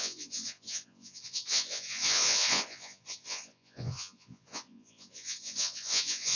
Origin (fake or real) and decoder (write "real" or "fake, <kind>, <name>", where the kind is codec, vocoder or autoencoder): fake, vocoder, Vocos